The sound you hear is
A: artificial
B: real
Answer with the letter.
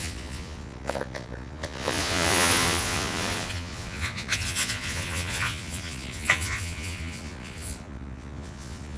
A